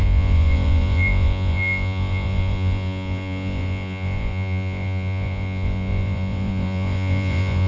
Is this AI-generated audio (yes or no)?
yes